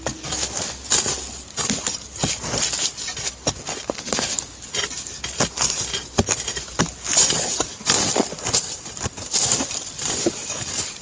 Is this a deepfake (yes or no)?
no